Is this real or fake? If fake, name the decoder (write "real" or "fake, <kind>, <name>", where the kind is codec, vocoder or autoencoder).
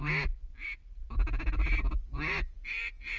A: real